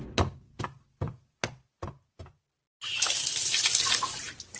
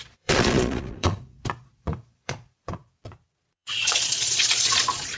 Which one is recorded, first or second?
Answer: first